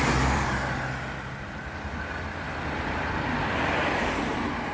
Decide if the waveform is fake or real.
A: fake